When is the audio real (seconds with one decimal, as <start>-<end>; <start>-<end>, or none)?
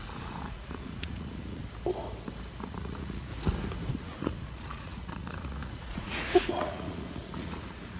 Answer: 1.6-2.6; 3.3-3.9